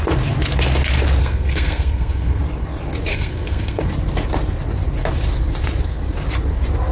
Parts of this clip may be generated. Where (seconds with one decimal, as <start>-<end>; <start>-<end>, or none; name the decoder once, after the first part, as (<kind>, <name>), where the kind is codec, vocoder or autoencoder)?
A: 1.2-2.4 (codec, SNAC); 3.1-3.8